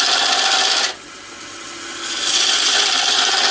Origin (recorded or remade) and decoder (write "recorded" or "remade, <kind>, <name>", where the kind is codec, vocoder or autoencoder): recorded